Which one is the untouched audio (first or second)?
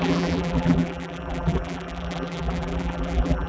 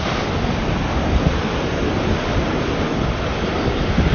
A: second